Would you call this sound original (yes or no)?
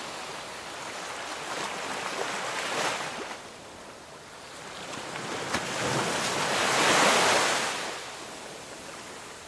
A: yes